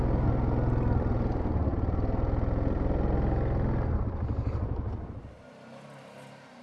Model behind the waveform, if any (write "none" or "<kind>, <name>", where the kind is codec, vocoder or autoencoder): none